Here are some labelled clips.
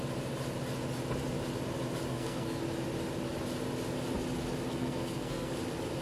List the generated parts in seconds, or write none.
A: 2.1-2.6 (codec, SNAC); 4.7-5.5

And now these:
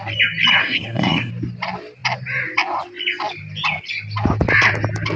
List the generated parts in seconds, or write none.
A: 0.6-1.3 (codec, SNAC)

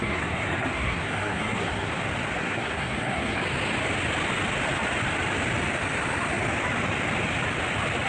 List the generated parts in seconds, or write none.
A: 0.0-1.9 (codec, SNAC); 2.4-3.4

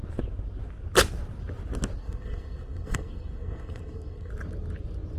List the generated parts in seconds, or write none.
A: 2.0-4.3 (codec, SNAC)